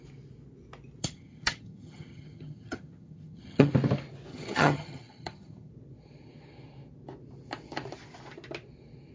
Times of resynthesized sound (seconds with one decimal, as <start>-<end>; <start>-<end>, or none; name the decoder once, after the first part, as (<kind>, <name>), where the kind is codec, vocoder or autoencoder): 1.0-3.7 (vocoder, HiFi-GAN); 4.3-5.7